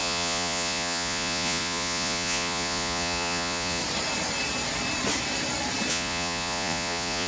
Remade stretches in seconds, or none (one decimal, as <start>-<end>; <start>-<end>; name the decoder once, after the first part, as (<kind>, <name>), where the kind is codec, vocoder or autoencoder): 0.0-3.8 (vocoder, Vocos); 5.9-7.3